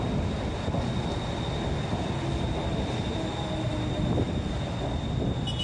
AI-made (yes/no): no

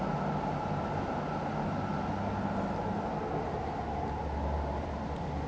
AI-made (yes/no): no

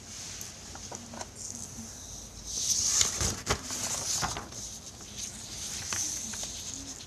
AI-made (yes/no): no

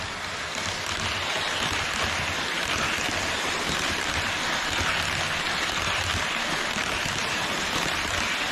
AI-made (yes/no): no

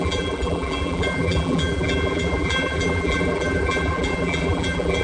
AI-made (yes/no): yes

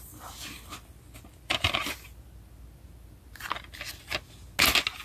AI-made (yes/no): no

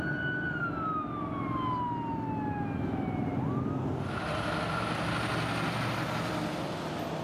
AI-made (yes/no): no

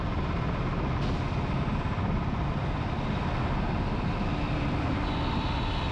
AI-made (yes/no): no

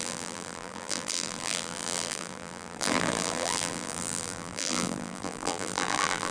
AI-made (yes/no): yes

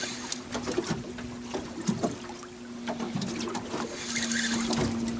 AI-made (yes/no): no